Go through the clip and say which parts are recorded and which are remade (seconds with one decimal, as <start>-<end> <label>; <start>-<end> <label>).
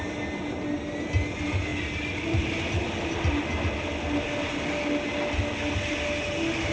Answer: 0.0-6.7 recorded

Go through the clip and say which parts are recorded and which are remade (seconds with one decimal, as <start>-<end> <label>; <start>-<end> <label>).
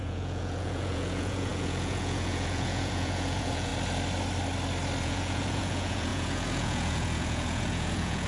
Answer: 0.0-3.7 remade; 3.7-5.0 recorded; 5.0-8.3 remade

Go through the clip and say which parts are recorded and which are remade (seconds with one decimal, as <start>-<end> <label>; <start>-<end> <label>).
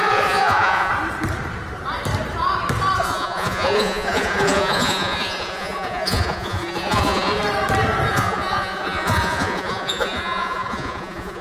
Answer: 0.0-0.9 remade; 0.9-3.0 recorded; 3.0-7.4 remade; 7.4-8.1 recorded; 8.1-11.4 remade